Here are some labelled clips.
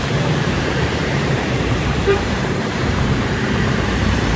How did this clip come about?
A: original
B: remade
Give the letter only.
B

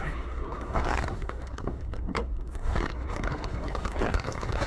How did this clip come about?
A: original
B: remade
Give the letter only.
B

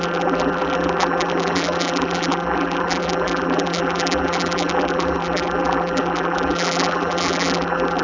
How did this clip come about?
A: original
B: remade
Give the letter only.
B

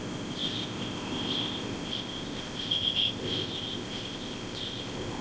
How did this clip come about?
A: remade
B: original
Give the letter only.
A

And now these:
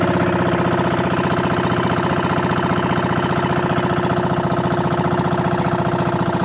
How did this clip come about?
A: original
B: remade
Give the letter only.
A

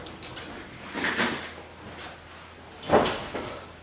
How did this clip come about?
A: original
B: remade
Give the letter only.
A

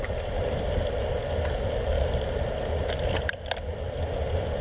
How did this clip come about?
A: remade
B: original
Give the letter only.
B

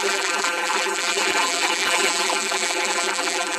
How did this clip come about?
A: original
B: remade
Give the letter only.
B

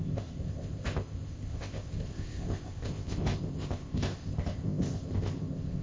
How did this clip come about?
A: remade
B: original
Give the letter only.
A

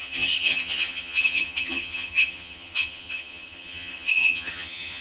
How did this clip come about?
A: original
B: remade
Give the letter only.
B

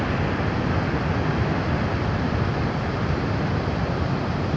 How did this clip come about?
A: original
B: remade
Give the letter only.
A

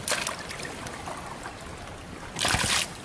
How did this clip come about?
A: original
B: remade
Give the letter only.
B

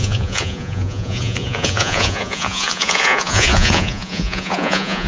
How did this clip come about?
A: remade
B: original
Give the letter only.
A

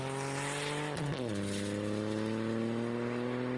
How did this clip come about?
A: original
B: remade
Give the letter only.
A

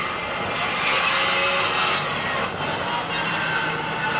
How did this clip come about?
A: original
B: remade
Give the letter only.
A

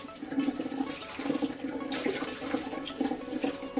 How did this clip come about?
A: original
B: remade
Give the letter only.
A